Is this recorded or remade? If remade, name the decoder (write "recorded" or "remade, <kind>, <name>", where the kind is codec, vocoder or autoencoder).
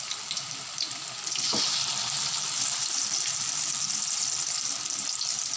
remade, vocoder, BigVGAN v2